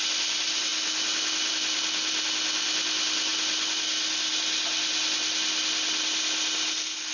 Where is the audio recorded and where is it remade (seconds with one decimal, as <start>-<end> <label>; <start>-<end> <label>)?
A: 0.0-7.1 recorded